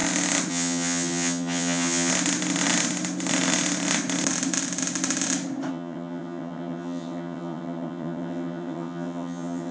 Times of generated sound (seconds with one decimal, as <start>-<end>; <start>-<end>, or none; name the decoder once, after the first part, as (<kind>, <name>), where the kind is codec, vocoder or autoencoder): 0.5-2.1 (vocoder, HiFi-GAN); 5.7-9.7